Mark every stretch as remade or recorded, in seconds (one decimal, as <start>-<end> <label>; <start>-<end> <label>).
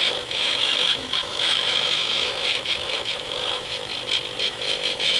0.0-3.9 remade; 3.9-4.4 recorded; 4.4-5.2 remade